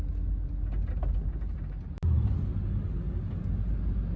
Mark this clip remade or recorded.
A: recorded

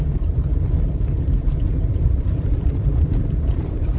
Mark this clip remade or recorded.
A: remade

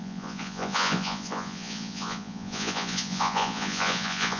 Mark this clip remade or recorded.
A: remade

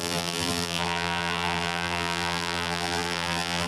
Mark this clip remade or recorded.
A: remade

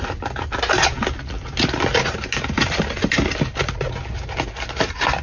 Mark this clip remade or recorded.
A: recorded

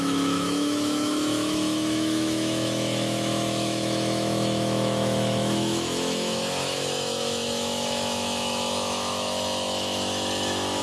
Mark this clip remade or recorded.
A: remade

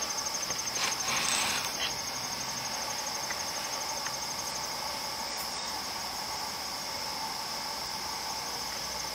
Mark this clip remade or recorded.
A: recorded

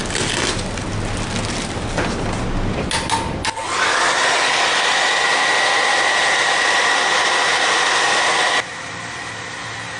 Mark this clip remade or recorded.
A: recorded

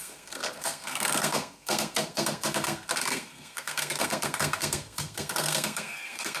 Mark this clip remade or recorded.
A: remade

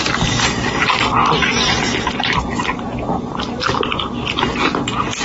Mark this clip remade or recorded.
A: recorded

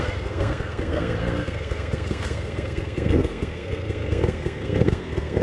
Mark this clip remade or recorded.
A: remade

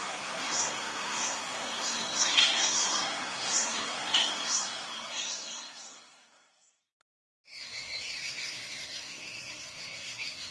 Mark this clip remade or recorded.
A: remade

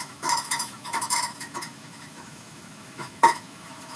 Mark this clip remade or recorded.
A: remade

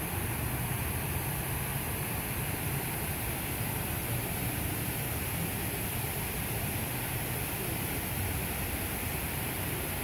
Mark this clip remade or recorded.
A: remade